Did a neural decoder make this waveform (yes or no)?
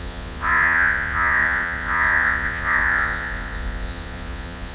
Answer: yes